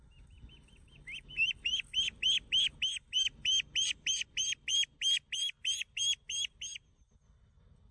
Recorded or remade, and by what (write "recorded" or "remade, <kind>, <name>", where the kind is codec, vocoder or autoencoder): recorded